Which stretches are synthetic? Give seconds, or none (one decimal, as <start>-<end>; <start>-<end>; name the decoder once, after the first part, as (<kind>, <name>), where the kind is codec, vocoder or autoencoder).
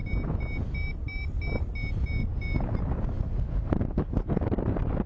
none